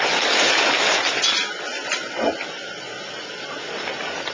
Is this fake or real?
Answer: real